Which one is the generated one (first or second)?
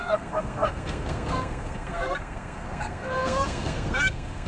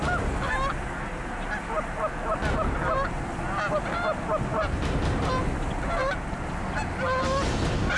first